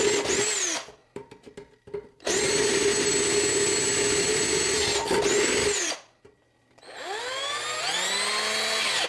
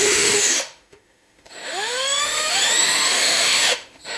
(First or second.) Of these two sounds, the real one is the first